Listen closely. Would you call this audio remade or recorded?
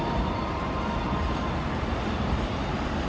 recorded